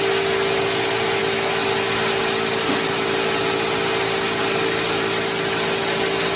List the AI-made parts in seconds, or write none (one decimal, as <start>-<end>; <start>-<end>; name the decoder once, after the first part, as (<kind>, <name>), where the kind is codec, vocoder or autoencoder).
none